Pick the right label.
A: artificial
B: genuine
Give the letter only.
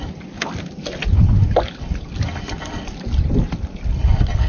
B